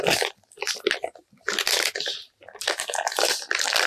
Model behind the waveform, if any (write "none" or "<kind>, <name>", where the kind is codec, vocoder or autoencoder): none